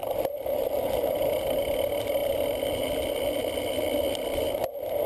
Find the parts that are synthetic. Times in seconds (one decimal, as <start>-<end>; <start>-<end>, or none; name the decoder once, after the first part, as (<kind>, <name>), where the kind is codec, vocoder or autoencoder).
none